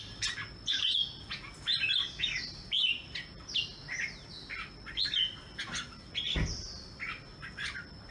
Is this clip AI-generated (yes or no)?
no